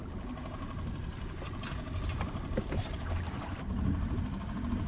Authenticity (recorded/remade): recorded